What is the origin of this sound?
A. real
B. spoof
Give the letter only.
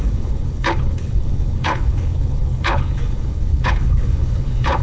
B